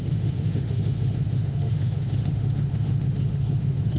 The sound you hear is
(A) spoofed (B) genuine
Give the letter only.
A